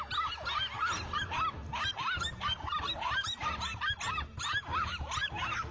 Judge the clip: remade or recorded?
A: recorded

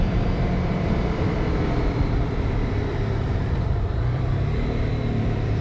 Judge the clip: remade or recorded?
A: remade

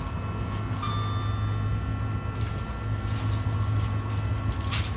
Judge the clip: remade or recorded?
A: recorded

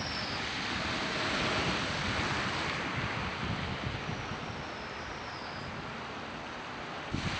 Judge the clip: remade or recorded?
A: recorded